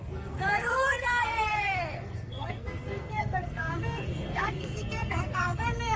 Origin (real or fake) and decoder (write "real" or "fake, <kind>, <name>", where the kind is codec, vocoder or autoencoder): fake, codec, SNAC